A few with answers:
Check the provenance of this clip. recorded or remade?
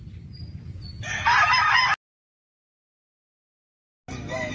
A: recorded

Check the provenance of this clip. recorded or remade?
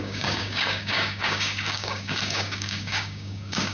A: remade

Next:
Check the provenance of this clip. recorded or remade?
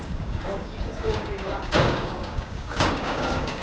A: remade